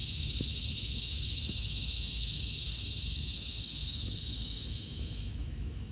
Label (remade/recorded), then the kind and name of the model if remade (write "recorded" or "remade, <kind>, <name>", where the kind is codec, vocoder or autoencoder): remade, autoencoder, DAC-VAE